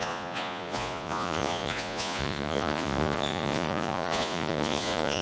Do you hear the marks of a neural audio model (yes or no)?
yes